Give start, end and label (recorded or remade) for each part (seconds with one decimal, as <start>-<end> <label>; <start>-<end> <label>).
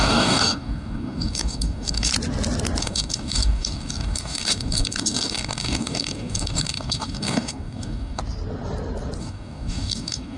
0.0-2.1 remade; 2.1-2.8 recorded; 2.8-8.2 remade; 8.2-9.2 recorded; 9.2-10.4 remade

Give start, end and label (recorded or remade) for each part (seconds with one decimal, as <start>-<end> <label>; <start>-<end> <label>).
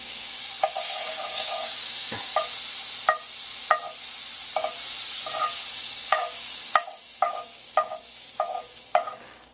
0.0-2.4 remade; 2.4-5.7 recorded; 5.7-9.5 remade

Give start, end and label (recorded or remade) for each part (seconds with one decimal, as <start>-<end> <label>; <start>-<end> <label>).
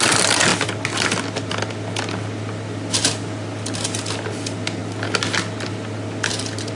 0.0-6.7 recorded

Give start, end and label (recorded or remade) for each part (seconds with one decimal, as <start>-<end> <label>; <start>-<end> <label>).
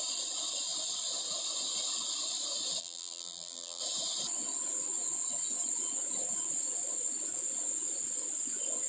0.0-2.8 recorded; 2.8-3.8 remade; 3.8-8.9 recorded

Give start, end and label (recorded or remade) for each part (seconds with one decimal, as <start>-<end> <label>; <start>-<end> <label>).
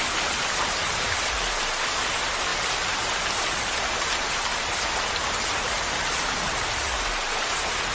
0.0-7.9 recorded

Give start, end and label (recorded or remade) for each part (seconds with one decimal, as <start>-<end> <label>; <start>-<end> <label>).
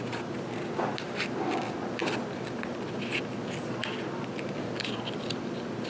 0.0-5.9 recorded